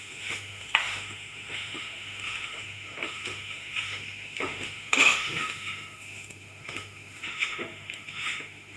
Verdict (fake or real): fake